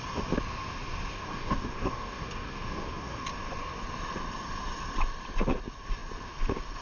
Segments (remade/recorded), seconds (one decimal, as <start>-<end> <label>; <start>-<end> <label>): 0.0-1.1 recorded; 1.1-3.2 remade; 3.2-6.8 recorded